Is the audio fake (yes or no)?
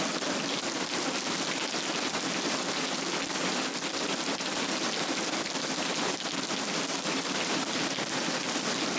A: no